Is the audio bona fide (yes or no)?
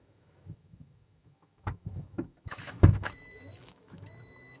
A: no